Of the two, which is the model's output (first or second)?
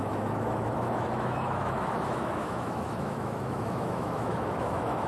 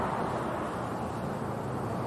first